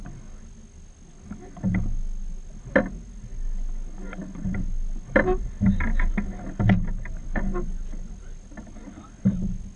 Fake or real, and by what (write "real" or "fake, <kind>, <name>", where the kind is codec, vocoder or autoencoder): real